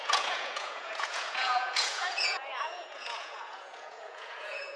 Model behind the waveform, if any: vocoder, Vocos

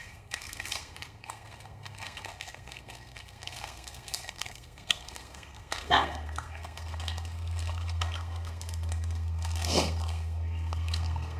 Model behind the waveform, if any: codec, SNAC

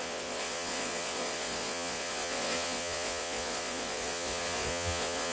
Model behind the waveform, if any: vocoder, Vocos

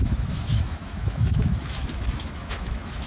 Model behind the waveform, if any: autoencoder, DAC-VAE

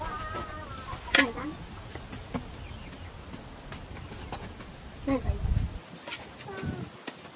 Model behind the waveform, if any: none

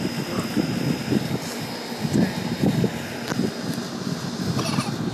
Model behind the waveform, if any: none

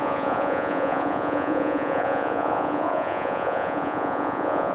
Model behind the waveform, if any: vocoder, Vocos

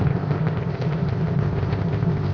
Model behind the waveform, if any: codec, ZipCodec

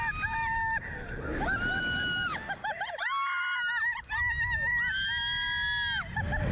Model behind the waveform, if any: none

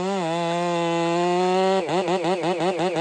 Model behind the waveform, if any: none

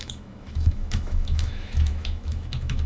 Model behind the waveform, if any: autoencoder, DAC-VAE